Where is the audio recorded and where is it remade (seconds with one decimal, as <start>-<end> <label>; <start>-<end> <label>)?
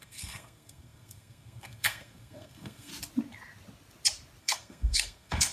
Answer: 0.0-2.9 remade; 2.9-4.4 recorded; 4.4-5.5 remade